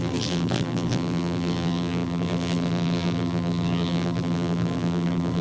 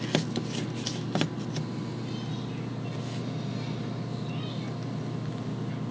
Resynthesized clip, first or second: first